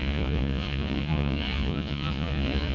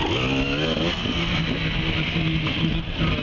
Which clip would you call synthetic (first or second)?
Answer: first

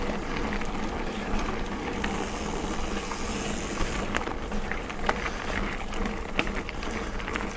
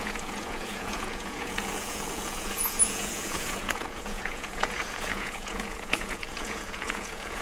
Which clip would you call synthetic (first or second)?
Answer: second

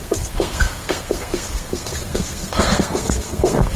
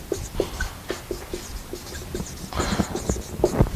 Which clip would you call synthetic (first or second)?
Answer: first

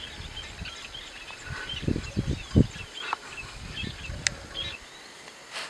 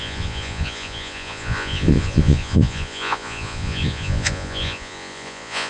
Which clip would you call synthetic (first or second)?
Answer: second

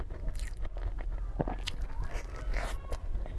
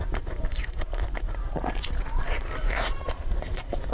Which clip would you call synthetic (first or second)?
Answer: second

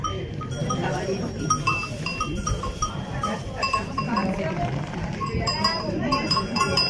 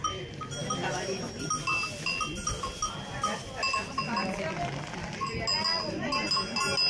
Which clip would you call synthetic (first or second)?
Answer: first